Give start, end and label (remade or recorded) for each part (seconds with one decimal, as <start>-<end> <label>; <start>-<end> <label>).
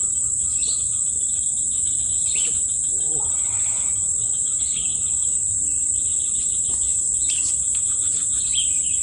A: 0.0-4.9 remade; 4.9-6.5 recorded; 6.5-6.9 remade; 6.9-8.4 recorded; 8.4-9.0 remade